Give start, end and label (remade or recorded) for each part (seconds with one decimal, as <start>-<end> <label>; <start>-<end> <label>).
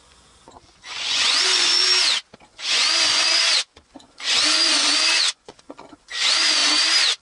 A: 0.0-1.9 remade; 1.9-2.5 recorded; 2.5-6.6 remade; 6.6-7.2 recorded